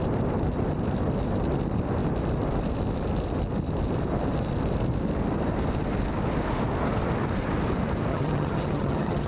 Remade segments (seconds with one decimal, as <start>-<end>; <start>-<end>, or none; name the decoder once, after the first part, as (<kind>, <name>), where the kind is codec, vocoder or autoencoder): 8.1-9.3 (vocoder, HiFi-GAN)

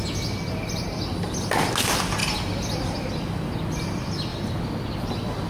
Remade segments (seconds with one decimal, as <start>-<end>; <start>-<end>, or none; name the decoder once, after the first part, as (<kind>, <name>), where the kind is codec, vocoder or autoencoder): none

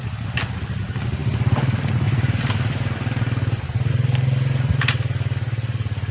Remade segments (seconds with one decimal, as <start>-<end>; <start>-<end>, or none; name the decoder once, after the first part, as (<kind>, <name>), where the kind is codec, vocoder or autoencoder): 1.2-3.9 (vocoder, BigVGAN v2)

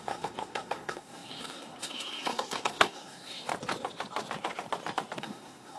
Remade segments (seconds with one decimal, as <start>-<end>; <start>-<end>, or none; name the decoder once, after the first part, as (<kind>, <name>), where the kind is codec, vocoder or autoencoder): 0.0-3.5 (codec, SNAC); 5.2-5.8

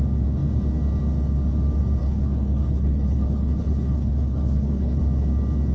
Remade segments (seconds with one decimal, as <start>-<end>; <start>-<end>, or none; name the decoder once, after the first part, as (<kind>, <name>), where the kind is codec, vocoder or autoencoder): 2.0-5.0 (codec, HILCodec)

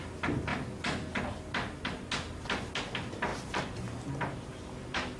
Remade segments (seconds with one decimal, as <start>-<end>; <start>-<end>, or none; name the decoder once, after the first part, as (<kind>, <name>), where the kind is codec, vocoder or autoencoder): 3.3-5.2 (vocoder, BigVGAN v2)

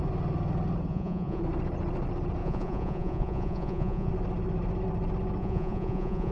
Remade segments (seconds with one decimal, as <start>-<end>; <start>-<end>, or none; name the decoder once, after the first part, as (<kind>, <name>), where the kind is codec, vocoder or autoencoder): 0.9-1.4 (vocoder, Vocos); 2.4-4.1; 5.4-6.3

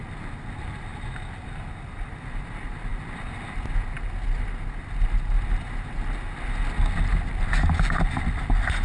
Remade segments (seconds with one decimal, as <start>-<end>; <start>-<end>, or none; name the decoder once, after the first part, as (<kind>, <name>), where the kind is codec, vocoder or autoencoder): none